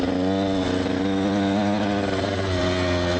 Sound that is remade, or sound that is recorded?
recorded